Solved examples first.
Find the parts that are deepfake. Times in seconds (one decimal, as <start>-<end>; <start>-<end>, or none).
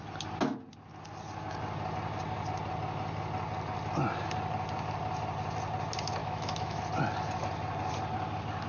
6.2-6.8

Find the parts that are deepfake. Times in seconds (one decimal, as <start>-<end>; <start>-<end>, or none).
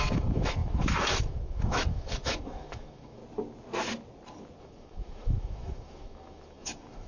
0.0-3.2; 4.6-7.1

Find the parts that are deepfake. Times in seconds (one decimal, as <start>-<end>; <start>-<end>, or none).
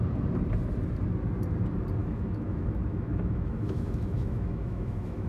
2.0-5.3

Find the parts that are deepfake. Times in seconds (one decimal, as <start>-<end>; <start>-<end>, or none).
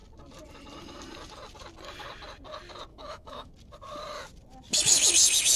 2.9-3.5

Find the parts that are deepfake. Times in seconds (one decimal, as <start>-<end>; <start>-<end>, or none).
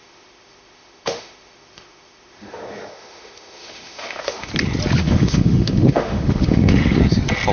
0.0-4.5; 5.0-7.0